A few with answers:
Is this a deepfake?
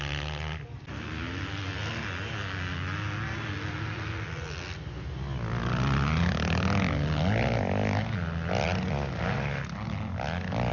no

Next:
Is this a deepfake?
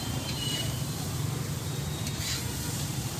yes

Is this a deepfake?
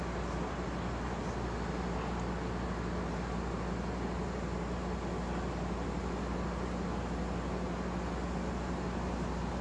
no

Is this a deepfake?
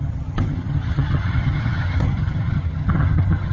yes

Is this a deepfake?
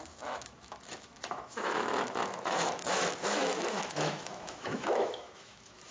yes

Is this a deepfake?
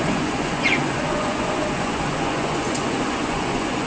yes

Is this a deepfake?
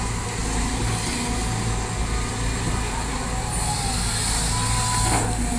no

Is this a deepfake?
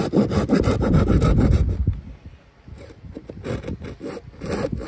no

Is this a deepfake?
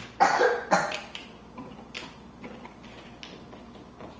no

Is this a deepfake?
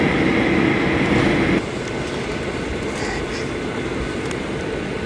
no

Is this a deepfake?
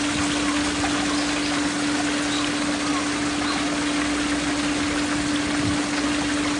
no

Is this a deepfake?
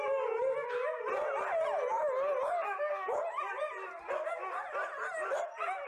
no